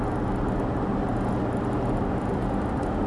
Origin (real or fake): real